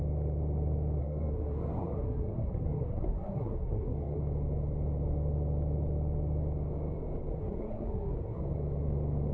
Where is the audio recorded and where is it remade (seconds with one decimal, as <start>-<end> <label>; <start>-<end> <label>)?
0.0-1.0 recorded; 1.0-4.2 remade; 4.2-7.3 recorded; 7.3-8.4 remade; 8.4-9.3 recorded